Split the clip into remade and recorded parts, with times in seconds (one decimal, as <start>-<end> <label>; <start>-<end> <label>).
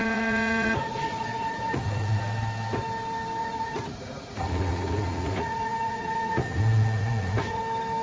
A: 0.0-2.2 remade; 2.2-3.4 recorded; 3.4-7.6 remade; 7.6-8.0 recorded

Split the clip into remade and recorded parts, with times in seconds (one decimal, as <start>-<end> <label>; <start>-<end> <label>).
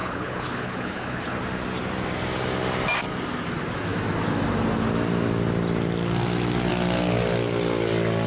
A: 0.0-1.4 remade; 1.4-8.3 recorded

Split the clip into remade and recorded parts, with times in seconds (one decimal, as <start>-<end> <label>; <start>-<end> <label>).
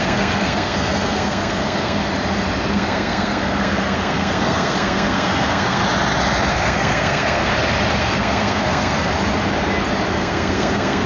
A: 0.0-2.0 remade; 2.0-2.7 recorded; 2.7-5.8 remade; 5.8-6.5 recorded; 6.5-7.5 remade; 7.5-8.0 recorded; 8.0-9.1 remade; 9.1-10.1 recorded; 10.1-11.1 remade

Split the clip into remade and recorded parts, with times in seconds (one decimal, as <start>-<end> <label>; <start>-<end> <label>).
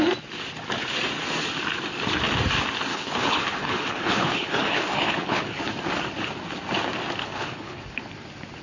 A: 0.0-2.9 recorded; 2.9-5.6 remade; 5.6-7.2 recorded; 7.2-7.8 remade; 7.8-8.6 recorded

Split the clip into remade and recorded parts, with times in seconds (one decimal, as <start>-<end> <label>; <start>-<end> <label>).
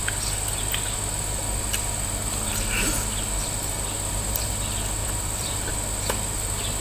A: 0.0-5.0 recorded; 5.0-5.7 remade; 5.7-6.8 recorded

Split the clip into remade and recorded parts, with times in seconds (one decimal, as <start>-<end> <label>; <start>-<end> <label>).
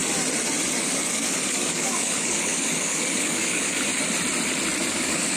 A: 0.0-0.8 recorded; 0.8-3.9 remade; 3.9-4.9 recorded; 4.9-5.4 remade